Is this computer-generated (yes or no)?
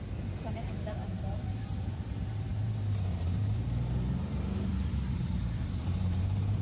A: yes